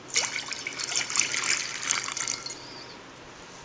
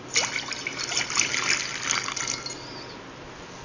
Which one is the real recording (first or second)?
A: second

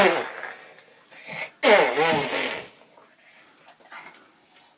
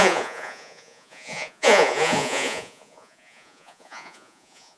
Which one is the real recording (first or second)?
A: first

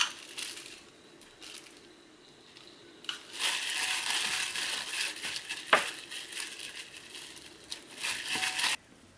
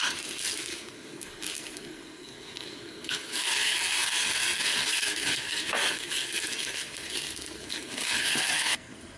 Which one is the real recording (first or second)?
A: first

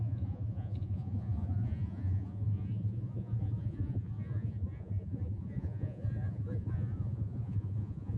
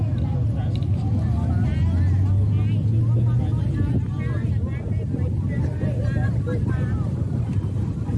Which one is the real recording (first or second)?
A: second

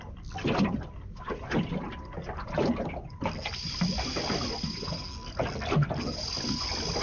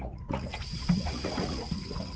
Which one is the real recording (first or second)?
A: first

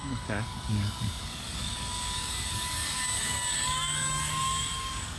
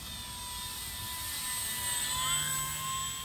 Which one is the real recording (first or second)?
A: second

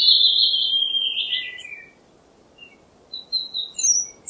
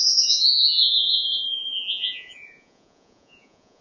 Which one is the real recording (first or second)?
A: first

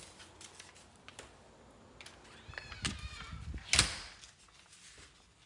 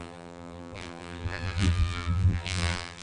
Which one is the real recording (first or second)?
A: first